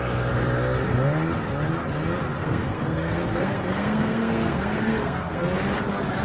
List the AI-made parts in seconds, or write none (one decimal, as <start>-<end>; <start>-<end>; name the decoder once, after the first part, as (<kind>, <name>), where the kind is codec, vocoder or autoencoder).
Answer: 2.4-5.4 (codec, SNAC)